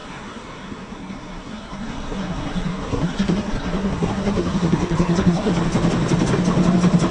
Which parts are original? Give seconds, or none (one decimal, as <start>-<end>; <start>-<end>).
5.5-7.1